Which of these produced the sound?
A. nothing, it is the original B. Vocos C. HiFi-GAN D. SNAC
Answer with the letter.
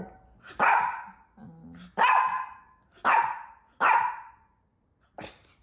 A